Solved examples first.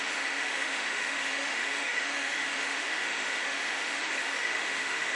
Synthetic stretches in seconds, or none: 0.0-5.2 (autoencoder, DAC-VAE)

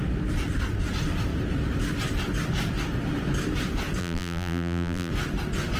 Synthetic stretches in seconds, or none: 4.0-5.1 (vocoder, BigVGAN v2)

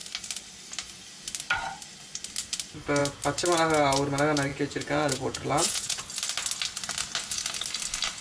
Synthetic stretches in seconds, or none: 4.5-6.0 (vocoder, Vocos)

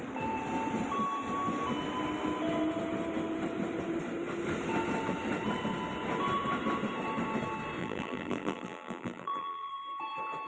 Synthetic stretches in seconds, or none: 7.8-9.7 (vocoder, BigVGAN v2)

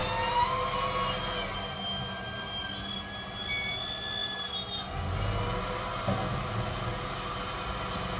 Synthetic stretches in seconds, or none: none